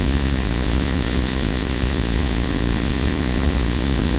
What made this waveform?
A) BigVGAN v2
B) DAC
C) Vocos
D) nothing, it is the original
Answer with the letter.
C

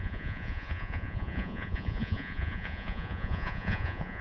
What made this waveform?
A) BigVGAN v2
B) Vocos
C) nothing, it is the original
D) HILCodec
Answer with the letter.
B